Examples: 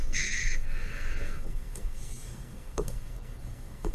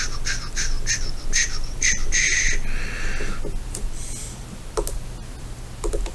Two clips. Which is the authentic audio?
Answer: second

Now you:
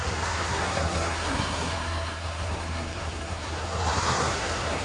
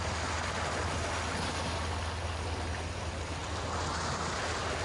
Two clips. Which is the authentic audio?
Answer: second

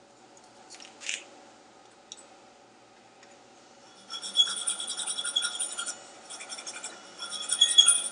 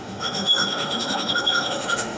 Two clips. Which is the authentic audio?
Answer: first